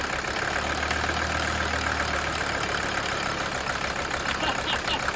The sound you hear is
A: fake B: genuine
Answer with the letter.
B